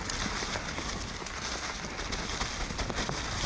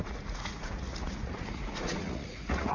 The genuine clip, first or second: first